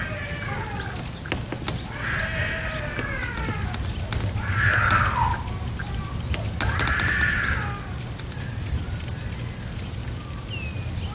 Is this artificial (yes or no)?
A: no